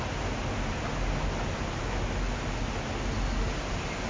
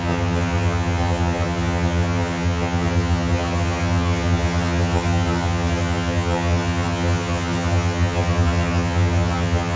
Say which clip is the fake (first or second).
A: second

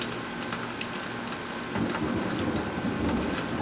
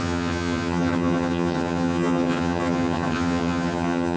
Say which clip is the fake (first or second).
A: second